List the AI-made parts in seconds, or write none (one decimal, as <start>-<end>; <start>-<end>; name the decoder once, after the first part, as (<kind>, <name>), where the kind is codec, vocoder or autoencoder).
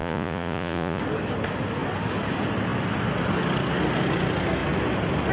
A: 0.0-1.0 (vocoder, Vocos)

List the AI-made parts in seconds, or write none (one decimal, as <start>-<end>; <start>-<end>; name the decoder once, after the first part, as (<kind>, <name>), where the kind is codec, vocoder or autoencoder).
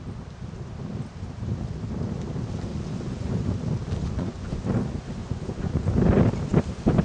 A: 2.7-3.5 (vocoder, Vocos); 4.0-4.6; 5.2-5.9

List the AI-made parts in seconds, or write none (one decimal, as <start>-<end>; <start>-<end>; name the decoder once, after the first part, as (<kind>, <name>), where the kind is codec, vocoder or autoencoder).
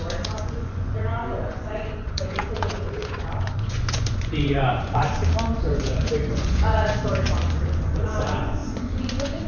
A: 0.0-5.1 (vocoder, Vocos); 5.6-9.5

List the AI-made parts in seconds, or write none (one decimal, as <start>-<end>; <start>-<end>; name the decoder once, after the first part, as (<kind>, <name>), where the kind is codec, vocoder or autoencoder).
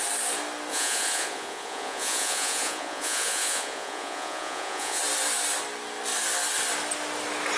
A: 0.7-5.0 (vocoder, Vocos)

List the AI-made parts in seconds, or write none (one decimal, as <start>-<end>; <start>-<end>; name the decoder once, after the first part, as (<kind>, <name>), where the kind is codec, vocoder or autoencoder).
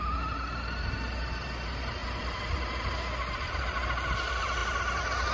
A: none